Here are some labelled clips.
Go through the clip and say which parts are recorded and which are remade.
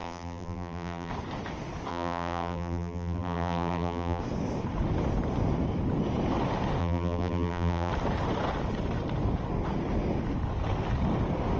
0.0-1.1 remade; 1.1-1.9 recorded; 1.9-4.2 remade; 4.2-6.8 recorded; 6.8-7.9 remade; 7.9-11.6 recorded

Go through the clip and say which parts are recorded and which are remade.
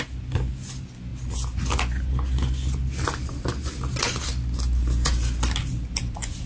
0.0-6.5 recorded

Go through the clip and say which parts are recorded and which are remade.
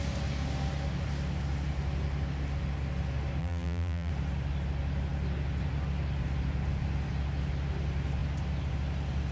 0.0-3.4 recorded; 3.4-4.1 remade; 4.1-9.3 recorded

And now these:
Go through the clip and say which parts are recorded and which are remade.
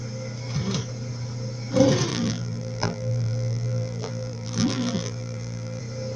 0.0-2.1 recorded; 2.1-5.8 remade; 5.8-6.2 recorded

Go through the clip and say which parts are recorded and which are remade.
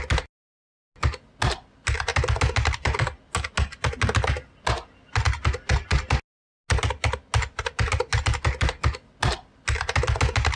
0.0-10.6 recorded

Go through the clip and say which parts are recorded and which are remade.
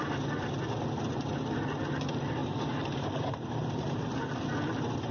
0.0-2.4 recorded; 2.4-4.2 remade; 4.2-5.1 recorded